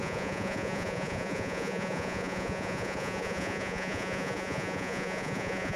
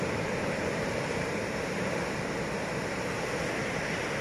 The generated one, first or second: first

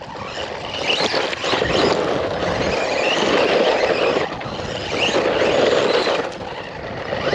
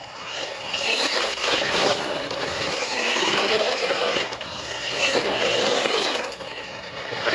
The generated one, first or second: second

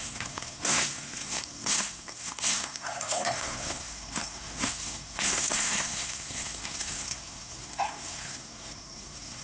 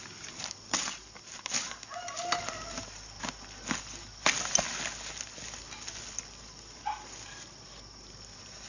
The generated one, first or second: first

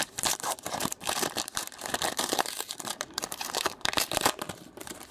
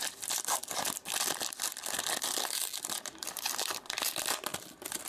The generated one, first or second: first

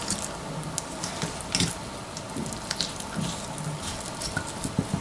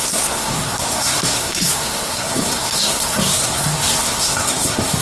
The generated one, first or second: second